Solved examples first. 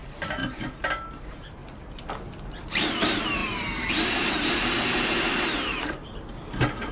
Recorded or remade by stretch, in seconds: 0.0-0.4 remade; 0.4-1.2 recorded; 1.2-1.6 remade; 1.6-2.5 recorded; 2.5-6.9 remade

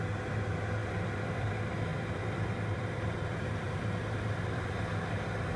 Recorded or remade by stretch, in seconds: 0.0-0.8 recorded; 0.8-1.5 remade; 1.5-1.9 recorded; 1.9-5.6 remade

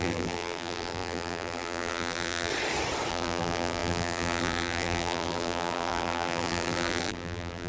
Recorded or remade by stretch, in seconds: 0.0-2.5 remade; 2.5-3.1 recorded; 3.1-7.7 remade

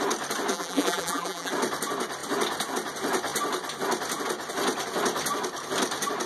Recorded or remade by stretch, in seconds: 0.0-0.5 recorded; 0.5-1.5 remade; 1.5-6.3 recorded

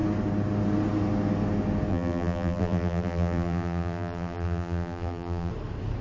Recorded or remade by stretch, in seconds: 0.0-1.9 recorded; 1.9-5.5 remade; 5.5-6.0 recorded

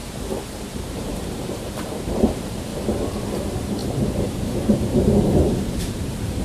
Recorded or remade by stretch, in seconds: 0.0-0.6 recorded; 0.6-2.7 remade; 2.7-3.4 recorded; 3.4-6.4 remade

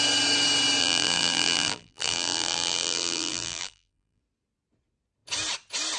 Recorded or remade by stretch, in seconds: 0.0-0.8 recorded; 0.8-4.2 remade; 4.2-6.0 recorded